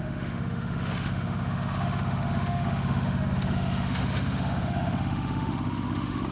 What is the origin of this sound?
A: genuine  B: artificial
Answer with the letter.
B